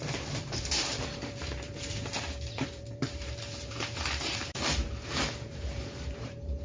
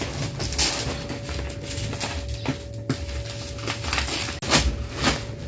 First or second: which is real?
second